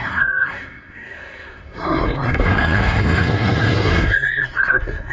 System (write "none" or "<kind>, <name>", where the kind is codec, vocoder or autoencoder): codec, SNAC